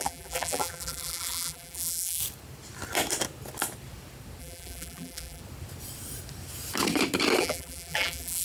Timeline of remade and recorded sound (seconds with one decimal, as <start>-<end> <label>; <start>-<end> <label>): 0.0-2.2 remade; 2.2-4.4 recorded; 4.4-5.4 remade; 5.4-7.4 recorded; 7.4-8.4 remade